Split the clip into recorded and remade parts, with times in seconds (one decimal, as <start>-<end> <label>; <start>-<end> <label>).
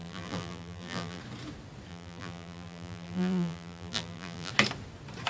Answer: 0.0-1.2 remade; 1.2-1.9 recorded; 1.9-4.5 remade; 4.5-5.3 recorded